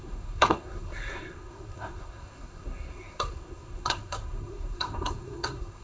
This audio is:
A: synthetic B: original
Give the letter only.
A